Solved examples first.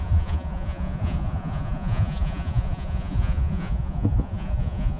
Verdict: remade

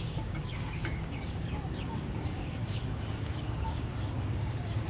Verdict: remade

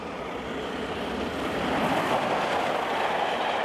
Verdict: remade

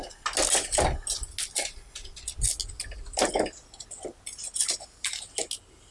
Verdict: recorded